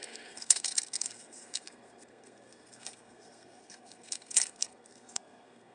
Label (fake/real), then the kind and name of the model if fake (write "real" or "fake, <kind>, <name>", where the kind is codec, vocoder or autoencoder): fake, codec, SNAC